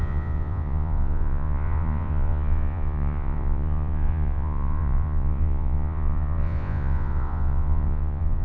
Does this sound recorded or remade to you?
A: remade